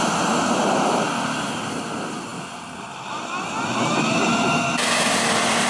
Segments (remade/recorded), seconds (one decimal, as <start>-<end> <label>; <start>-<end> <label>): 0.0-4.3 recorded; 4.3-5.7 remade

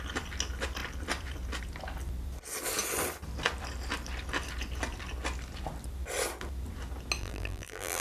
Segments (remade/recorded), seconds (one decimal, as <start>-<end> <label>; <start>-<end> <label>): 0.0-7.2 recorded; 7.2-8.0 remade